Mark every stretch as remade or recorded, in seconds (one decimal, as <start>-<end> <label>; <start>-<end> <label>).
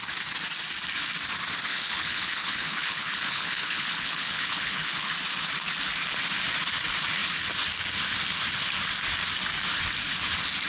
0.0-1.7 recorded; 1.7-5.1 remade; 5.1-10.7 recorded